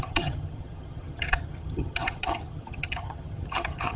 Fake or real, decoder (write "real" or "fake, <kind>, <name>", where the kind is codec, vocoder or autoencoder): fake, vocoder, HiFi-GAN